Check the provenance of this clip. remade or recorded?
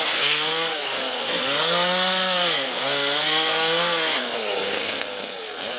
remade